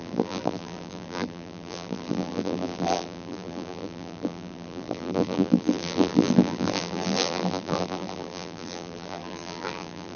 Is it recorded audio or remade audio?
remade